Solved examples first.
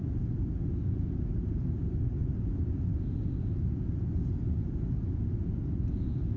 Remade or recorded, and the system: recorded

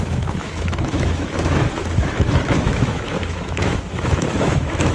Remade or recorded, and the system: remade, autoencoder, DAC-VAE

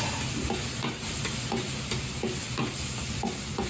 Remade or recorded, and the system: recorded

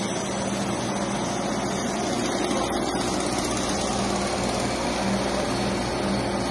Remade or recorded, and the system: recorded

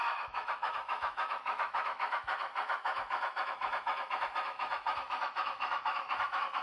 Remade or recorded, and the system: remade, autoencoder, DAC-VAE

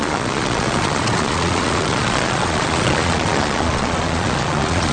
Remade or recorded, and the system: remade, vocoder, Vocos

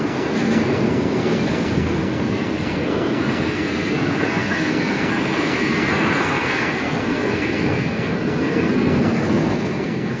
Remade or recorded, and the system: remade, codec, SNAC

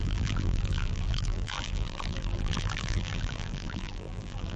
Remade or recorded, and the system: remade, vocoder, BigVGAN v2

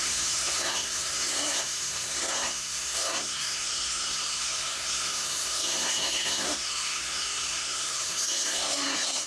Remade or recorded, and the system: remade, codec, SNAC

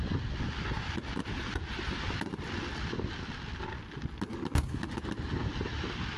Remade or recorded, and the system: recorded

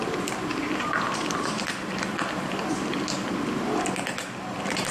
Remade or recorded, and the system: recorded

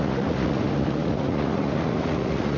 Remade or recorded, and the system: remade, vocoder, Vocos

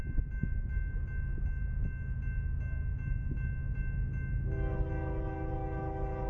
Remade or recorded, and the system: recorded